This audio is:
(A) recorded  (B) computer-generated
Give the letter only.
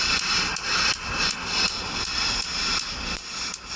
A